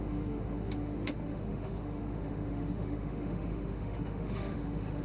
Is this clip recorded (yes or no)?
no